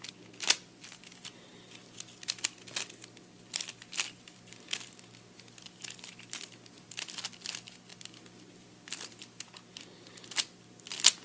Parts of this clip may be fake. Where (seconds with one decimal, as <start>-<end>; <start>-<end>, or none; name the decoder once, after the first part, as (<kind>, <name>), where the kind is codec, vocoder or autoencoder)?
none